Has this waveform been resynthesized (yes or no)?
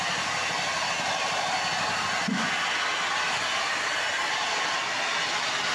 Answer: no